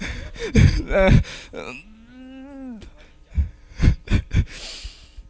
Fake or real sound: real